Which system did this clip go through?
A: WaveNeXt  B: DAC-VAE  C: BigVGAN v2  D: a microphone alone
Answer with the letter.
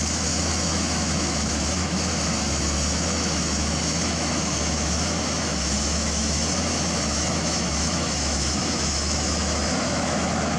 B